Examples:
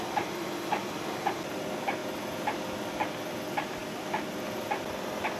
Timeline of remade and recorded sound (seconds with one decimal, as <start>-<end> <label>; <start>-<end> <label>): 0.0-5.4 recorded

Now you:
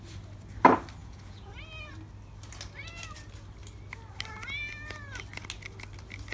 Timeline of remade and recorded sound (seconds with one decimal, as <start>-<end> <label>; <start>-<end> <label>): 0.0-1.0 recorded; 1.0-1.5 remade; 1.5-6.3 recorded

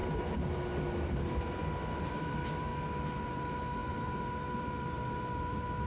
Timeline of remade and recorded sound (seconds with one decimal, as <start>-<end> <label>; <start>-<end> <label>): 0.0-2.0 recorded; 2.0-2.7 remade; 2.7-3.2 recorded; 3.2-5.9 remade

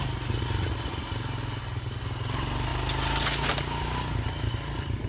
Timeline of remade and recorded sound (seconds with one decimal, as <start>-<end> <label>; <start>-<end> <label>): 0.0-5.1 recorded